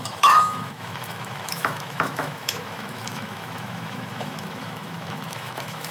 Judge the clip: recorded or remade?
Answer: remade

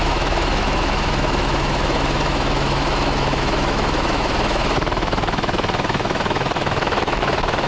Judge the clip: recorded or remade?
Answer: remade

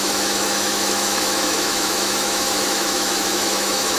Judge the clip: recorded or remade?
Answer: remade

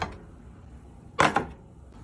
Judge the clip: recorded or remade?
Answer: recorded